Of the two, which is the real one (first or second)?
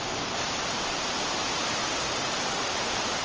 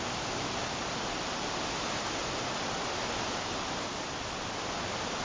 second